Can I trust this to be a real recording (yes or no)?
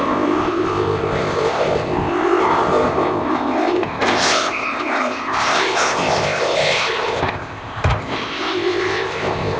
no